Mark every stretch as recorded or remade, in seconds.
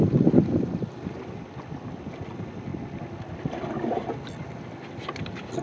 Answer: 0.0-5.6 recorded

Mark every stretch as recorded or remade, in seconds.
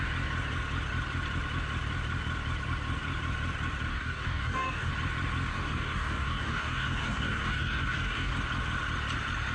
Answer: 0.0-3.9 recorded; 3.9-4.9 remade; 4.9-5.5 recorded; 5.5-8.3 remade; 8.3-9.5 recorded